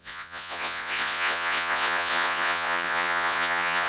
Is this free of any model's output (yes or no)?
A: no